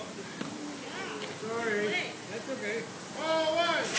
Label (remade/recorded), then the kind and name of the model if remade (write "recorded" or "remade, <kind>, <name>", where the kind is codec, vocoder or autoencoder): recorded